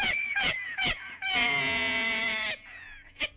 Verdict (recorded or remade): remade